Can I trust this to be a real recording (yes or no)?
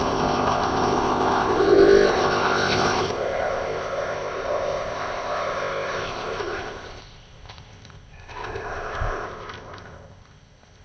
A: no